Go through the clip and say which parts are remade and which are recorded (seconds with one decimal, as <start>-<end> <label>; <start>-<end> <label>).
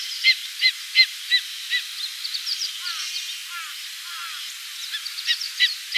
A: 0.0-6.0 recorded